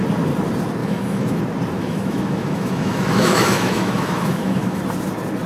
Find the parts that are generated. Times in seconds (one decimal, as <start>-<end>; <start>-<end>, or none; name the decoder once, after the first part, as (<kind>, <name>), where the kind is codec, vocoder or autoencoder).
0.8-1.4 (autoencoder, DAC-VAE); 1.8-4.8